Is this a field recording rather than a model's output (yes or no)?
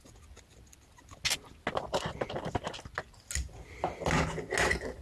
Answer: yes